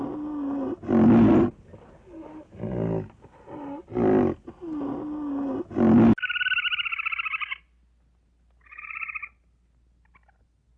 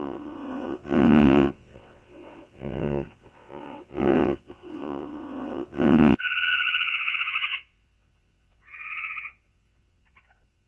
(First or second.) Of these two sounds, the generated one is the second